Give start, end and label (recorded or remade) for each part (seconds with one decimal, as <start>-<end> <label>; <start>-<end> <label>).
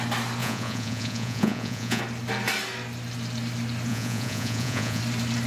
0.0-0.4 recorded; 0.4-2.0 remade; 2.0-3.9 recorded; 3.9-5.0 remade; 5.0-5.5 recorded